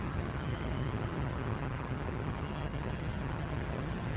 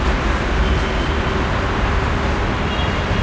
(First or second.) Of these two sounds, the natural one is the second